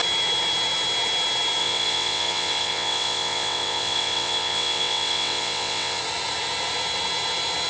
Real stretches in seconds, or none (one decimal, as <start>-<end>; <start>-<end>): 0.0-1.6; 6.0-7.7